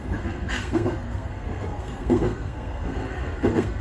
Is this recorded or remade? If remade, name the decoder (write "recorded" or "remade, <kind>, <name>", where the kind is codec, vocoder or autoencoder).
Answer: remade, codec, SNAC